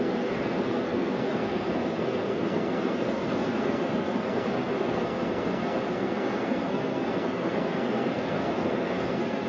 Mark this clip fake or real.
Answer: fake